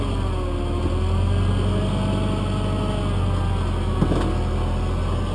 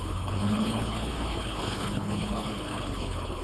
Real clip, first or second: first